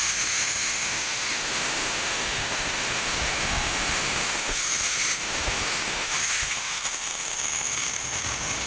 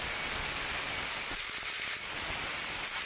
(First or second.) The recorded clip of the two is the second